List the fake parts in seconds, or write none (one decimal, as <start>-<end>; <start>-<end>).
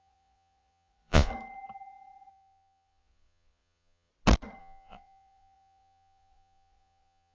0.0-1.3; 2.3-4.1; 4.6-7.3